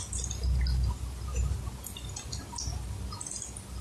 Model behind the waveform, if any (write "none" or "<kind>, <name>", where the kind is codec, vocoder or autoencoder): none